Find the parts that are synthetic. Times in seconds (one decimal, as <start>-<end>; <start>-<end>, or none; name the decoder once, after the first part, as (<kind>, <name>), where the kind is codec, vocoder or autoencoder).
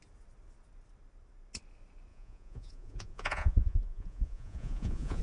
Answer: 2.1-5.2 (vocoder, Vocos)